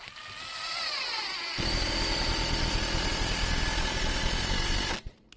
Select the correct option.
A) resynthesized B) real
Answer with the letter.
B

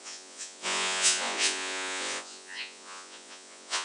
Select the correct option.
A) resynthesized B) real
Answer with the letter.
A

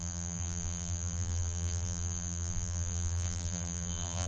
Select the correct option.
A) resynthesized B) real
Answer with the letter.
A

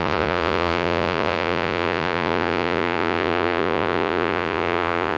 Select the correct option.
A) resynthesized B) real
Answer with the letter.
A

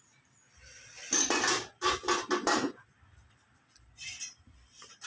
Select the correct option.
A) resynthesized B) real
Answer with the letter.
B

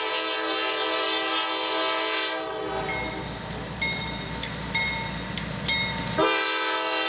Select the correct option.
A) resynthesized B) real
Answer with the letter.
B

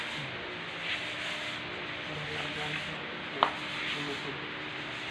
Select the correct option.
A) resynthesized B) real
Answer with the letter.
B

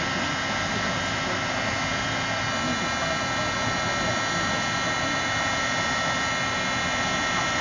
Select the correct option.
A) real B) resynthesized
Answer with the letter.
A